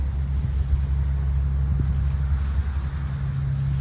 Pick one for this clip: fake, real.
real